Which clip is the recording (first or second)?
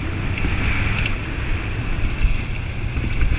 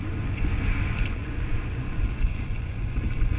first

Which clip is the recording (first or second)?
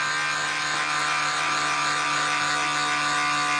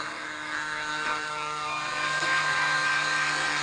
first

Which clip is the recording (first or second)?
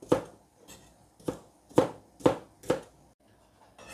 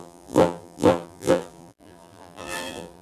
first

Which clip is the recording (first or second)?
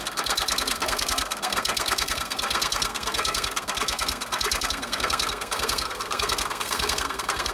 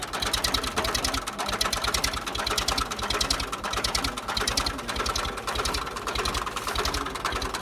second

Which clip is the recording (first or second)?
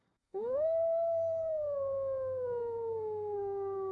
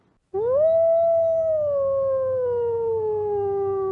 second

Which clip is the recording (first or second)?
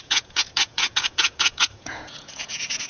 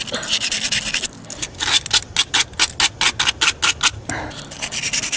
second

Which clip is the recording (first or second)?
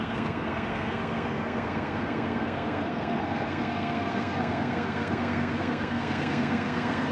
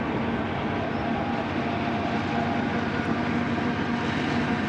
second